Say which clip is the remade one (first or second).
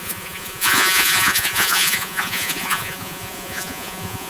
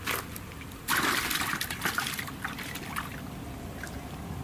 first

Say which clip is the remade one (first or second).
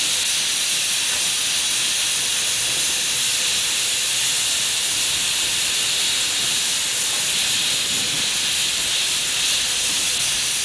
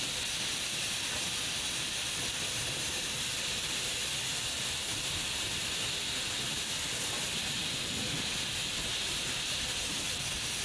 second